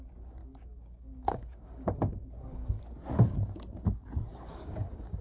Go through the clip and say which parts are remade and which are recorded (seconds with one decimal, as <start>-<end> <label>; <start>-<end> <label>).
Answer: 0.0-0.4 recorded; 0.4-2.8 remade; 2.8-4.3 recorded; 4.3-5.2 remade